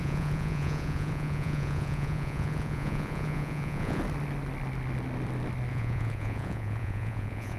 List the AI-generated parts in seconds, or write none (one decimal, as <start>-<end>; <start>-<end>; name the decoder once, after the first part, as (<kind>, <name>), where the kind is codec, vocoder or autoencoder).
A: 0.0-4.0 (vocoder, Vocos); 5.7-7.6